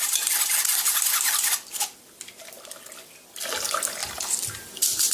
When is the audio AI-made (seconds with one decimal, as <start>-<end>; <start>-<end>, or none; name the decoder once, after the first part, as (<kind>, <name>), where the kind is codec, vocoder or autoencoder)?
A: none